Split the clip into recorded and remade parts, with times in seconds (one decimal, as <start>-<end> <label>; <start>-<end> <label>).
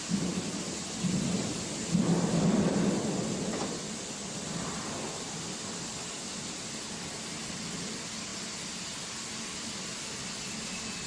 0.0-11.1 recorded